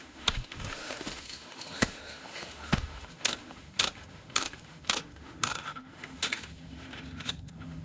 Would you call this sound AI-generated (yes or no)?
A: yes